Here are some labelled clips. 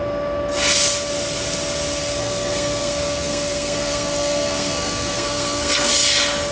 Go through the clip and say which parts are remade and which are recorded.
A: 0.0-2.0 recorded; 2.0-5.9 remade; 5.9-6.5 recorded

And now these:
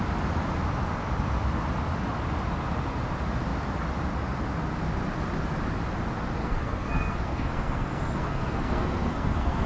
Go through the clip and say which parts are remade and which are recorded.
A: 0.0-6.4 recorded; 6.4-9.7 remade

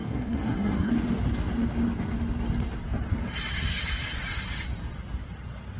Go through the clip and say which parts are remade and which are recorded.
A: 0.0-0.9 remade; 0.9-5.8 recorded

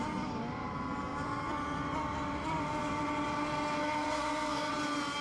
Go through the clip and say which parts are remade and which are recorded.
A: 0.0-3.8 recorded; 3.8-4.7 remade; 4.7-5.2 recorded

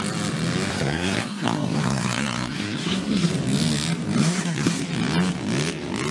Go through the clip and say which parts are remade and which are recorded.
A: 0.0-0.7 recorded; 0.7-3.3 remade; 3.3-4.2 recorded; 4.2-4.8 remade; 4.8-6.1 recorded